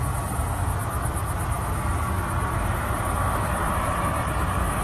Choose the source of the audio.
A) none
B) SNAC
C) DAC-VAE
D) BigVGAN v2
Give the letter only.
A